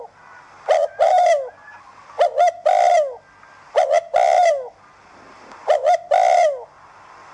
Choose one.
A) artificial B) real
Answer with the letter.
B